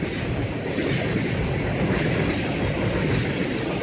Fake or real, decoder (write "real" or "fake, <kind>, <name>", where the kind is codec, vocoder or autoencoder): real